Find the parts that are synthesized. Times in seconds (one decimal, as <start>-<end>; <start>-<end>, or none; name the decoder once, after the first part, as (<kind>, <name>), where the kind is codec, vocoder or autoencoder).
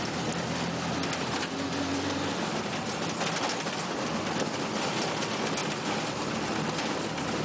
none